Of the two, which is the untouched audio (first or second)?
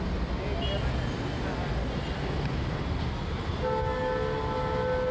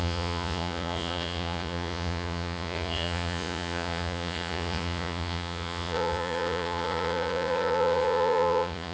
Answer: first